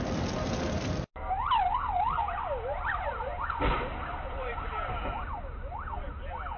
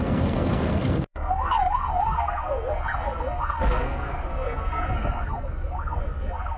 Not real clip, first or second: second